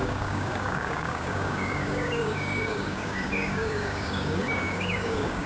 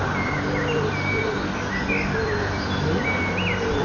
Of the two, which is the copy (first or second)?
first